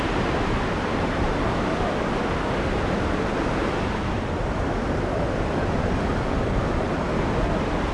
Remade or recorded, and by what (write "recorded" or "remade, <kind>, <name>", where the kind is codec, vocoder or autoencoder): remade, vocoder, BigVGAN v2